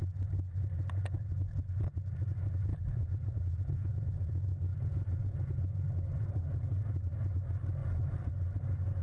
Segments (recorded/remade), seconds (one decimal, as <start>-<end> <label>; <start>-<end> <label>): 0.0-2.7 recorded; 2.7-4.3 remade; 4.3-4.7 recorded; 4.7-5.6 remade; 5.6-9.0 recorded